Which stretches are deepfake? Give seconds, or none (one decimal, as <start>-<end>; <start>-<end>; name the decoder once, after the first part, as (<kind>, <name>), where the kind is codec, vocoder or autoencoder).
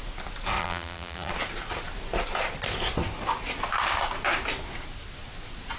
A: 0.6-1.3 (vocoder, BigVGAN v2)